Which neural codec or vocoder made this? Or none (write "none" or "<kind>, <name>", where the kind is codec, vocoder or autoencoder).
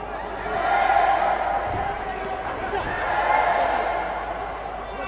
none